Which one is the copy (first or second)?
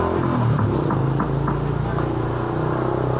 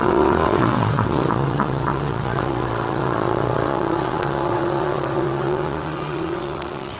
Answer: second